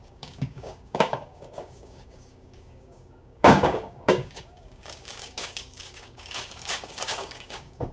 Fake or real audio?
fake